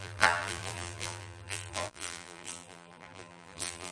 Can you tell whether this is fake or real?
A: fake